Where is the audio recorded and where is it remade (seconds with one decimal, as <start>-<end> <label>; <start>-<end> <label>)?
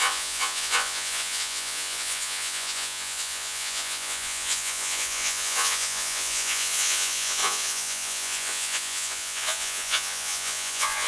0.0-11.1 remade